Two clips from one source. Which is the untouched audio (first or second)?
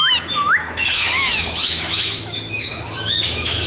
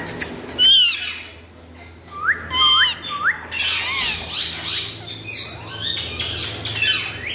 second